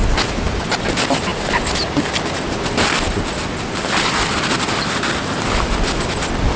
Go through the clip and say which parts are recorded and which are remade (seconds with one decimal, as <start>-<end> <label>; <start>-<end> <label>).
0.0-6.6 recorded